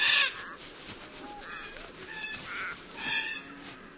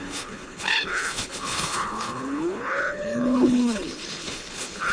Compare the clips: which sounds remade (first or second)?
second